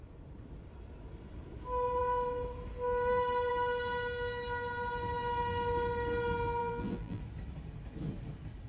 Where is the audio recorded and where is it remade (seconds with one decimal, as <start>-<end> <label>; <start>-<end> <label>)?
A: 0.0-6.6 recorded; 6.6-7.2 remade; 7.2-8.7 recorded